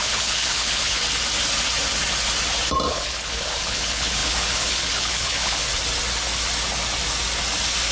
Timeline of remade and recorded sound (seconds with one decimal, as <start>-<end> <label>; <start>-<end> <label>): 0.0-1.0 remade; 1.0-2.9 recorded; 2.9-5.7 remade; 5.7-7.9 recorded